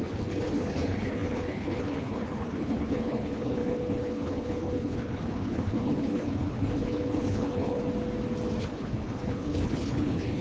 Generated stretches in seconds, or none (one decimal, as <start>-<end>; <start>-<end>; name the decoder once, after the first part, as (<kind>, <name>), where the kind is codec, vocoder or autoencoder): 0.0-7.8 (codec, HILCodec); 8.6-10.4